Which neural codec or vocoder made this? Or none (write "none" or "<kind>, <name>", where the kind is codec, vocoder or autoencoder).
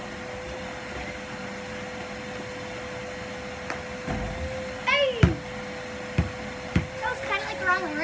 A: none